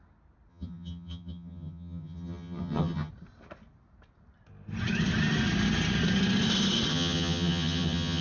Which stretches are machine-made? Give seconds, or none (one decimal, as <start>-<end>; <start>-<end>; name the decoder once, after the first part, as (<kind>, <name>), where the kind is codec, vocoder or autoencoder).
0.5-3.1 (vocoder, HiFi-GAN); 6.9-8.2